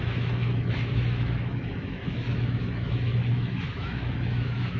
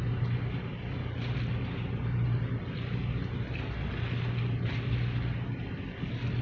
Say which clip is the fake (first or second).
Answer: first